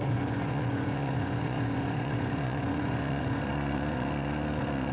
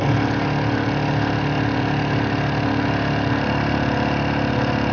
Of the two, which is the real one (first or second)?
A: second